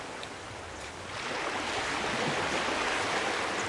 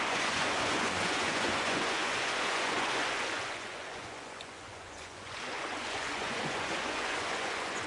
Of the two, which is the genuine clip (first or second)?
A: first